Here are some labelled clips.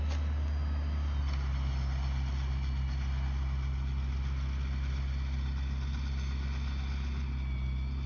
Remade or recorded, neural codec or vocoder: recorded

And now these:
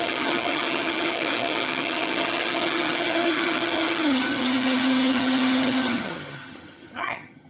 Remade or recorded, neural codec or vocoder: remade, vocoder, HiFi-GAN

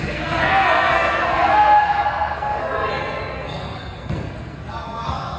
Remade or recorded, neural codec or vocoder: remade, codec, SNAC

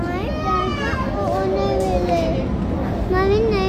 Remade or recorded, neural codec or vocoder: recorded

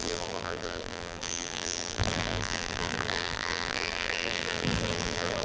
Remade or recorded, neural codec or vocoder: remade, vocoder, BigVGAN v2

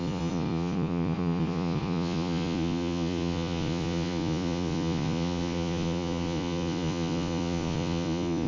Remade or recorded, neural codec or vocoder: remade, vocoder, Vocos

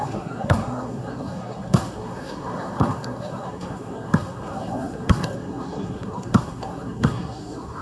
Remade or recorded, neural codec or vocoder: remade, codec, SNAC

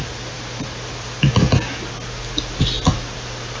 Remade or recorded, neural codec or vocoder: recorded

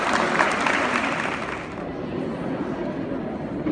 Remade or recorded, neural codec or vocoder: recorded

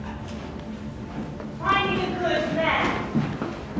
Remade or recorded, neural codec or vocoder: recorded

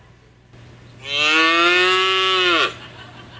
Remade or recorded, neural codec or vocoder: recorded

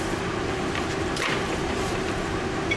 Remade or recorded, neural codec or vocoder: remade, vocoder, BigVGAN v2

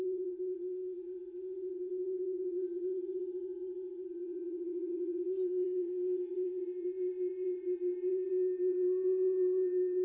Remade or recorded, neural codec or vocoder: remade, vocoder, WaveNeXt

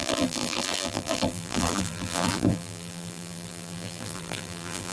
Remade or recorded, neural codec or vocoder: remade, vocoder, BigVGAN v2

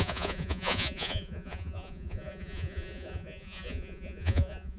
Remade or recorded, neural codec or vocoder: remade, vocoder, Vocos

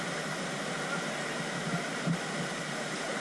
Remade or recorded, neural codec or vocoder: recorded